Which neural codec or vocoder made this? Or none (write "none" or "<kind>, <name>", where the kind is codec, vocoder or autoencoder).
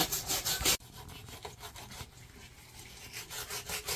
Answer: none